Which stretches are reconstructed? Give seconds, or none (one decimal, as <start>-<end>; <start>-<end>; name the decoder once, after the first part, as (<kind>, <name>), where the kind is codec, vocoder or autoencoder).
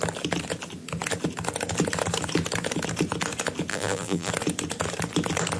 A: 3.7-4.3 (vocoder, BigVGAN v2)